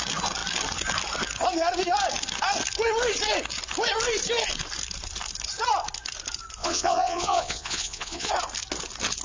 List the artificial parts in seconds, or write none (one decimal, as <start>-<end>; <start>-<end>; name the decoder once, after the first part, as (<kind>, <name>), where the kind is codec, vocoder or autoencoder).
6.6-8.3 (vocoder, Vocos)